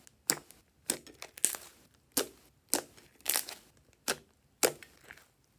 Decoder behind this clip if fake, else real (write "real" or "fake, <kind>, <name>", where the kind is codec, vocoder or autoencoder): real